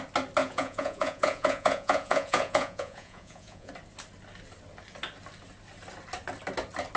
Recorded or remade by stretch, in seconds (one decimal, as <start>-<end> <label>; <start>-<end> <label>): 0.0-0.4 recorded; 0.4-3.7 remade; 3.7-7.0 recorded